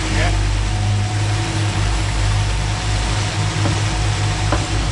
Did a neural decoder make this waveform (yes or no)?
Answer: no